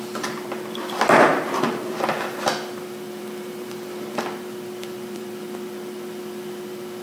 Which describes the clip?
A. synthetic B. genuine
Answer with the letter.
A